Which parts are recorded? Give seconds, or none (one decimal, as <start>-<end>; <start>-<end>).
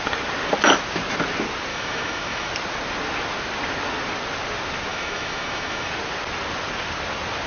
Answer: 0.0-1.7; 2.5-4.9; 5.9-7.5